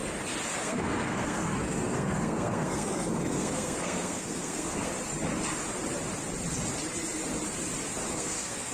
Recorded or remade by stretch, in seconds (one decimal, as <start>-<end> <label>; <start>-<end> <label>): 0.0-0.6 recorded; 0.6-4.9 remade; 4.9-8.1 recorded; 8.1-8.7 remade